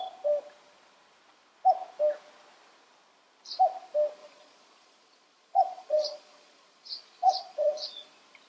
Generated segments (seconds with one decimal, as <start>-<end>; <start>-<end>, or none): 4.2-8.1